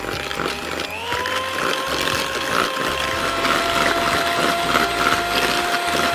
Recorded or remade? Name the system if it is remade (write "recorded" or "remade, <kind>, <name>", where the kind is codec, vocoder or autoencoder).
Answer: recorded